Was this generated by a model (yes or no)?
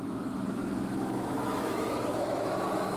yes